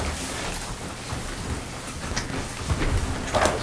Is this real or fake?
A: real